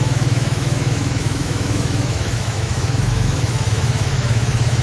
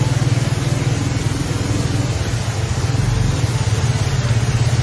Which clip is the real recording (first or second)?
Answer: second